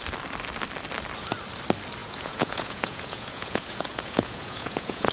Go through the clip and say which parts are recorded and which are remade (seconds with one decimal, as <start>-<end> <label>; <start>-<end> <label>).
0.0-2.0 recorded; 2.0-5.1 remade